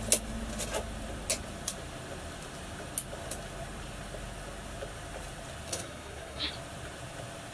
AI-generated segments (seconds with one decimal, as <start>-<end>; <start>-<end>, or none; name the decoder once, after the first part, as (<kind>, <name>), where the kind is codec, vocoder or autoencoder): 5.7-6.5 (codec, SNAC)